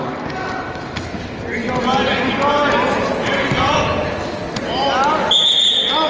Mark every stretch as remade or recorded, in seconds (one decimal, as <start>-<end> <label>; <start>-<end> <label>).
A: 0.0-6.1 recorded